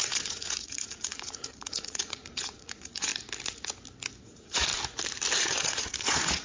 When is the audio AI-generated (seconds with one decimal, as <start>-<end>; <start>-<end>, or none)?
0.0-3.1; 4.2-4.7; 5.4-6.4